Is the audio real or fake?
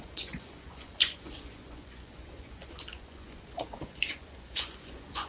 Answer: fake